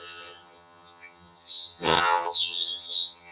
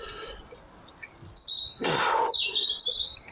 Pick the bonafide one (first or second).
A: second